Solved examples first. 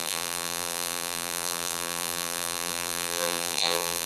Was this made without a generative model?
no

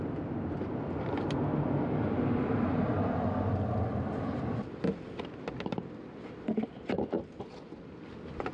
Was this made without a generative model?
yes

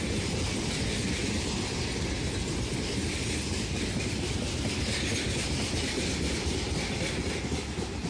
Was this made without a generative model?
yes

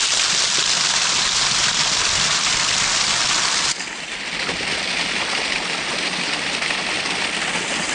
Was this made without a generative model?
yes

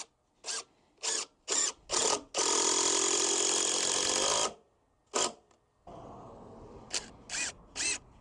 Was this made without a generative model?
yes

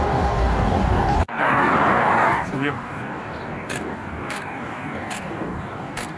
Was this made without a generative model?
no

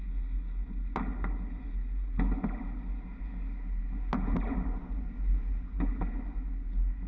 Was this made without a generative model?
yes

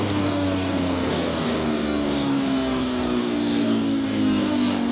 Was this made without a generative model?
no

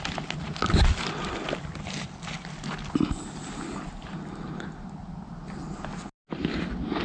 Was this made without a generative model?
yes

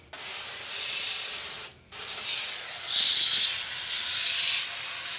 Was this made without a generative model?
yes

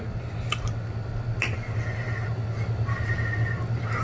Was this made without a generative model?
yes